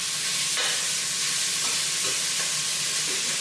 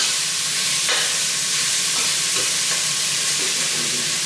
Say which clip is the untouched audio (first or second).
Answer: first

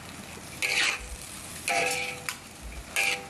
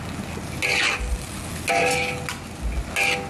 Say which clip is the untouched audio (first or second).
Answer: second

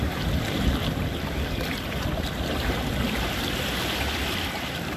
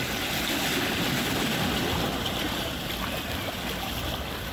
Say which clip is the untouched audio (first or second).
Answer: second